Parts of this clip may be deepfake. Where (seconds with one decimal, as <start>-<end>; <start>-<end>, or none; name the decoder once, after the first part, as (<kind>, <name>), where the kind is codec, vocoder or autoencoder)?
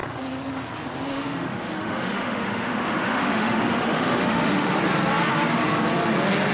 1.1-4.7 (autoencoder, DAC-VAE)